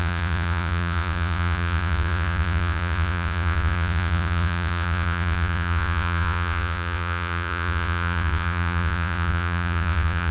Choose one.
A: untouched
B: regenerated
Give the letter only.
B